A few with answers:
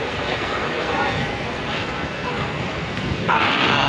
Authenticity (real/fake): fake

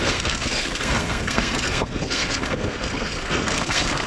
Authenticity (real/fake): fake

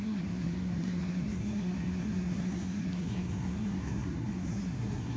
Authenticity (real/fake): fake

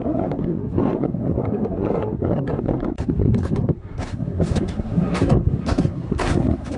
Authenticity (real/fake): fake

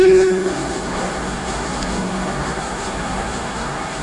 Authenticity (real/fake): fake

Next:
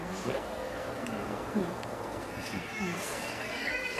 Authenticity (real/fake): fake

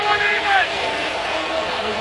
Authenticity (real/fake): fake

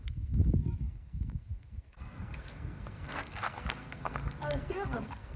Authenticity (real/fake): fake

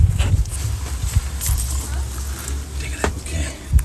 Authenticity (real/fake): real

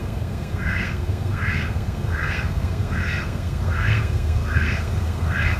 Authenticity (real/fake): fake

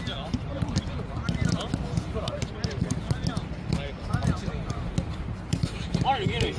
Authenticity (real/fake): real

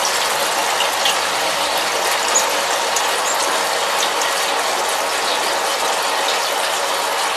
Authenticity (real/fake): real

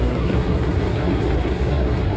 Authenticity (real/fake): fake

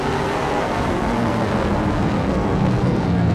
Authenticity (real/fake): fake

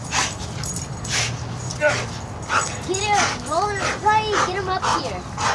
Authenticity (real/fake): real